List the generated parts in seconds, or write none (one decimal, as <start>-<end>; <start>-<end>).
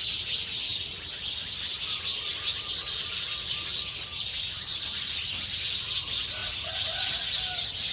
6.4-7.1